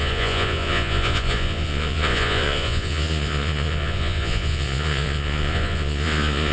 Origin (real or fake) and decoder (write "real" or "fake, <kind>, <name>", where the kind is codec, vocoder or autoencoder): fake, vocoder, Vocos